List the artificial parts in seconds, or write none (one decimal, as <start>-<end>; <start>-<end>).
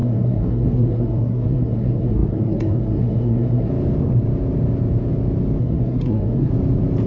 0.0-3.7; 5.6-6.5